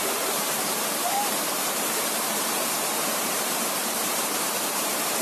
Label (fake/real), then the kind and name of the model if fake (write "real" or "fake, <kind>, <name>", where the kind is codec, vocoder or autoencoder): fake, vocoder, BigVGAN v2